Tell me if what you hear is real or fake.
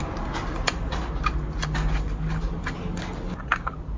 real